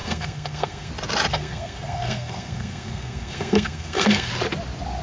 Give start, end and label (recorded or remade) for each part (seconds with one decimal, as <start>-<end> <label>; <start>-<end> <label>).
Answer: 0.0-0.9 remade; 0.9-1.3 recorded; 1.3-4.3 remade; 4.3-5.0 recorded